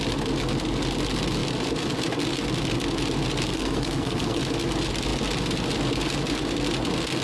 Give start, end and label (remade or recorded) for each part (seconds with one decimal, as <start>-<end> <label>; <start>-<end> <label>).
0.0-3.5 recorded; 3.5-4.4 remade; 4.4-7.2 recorded